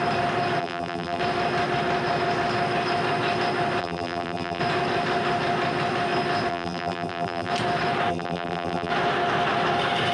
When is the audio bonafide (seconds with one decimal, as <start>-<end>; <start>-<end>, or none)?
0.0-0.6; 1.2-3.8; 4.6-6.5; 7.5-8.1; 8.9-10.1